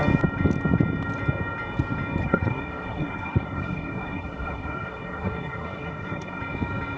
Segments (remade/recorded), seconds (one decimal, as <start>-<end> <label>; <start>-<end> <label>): 0.0-2.2 recorded; 2.2-6.4 remade; 6.4-7.0 recorded